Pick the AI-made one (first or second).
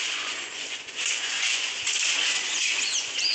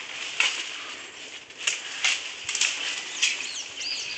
first